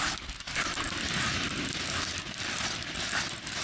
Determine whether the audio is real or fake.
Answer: real